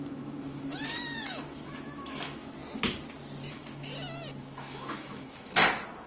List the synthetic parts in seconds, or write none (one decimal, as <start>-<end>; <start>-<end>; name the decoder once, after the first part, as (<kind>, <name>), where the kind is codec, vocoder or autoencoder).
0.0-2.6 (autoencoder, DAC-VAE); 3.5-3.9; 4.4-5.6